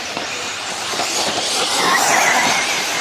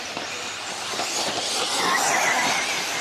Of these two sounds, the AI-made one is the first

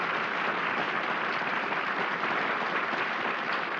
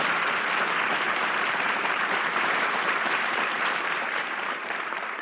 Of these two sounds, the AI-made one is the second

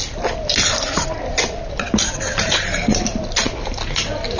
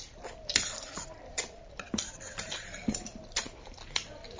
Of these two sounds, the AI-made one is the second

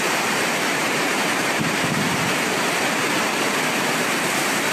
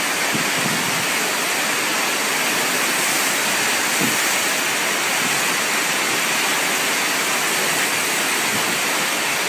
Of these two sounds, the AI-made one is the first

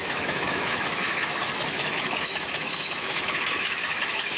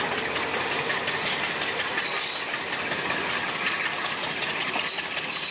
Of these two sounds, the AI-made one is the first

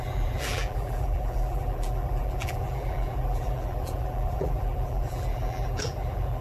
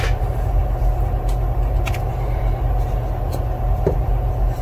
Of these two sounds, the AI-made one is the first